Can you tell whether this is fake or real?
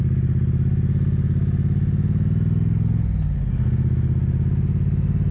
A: real